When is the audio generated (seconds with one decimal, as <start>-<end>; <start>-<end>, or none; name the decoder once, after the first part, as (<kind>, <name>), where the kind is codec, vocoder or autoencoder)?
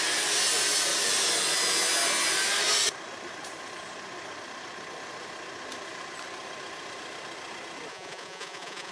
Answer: 7.9-8.9 (vocoder, Vocos)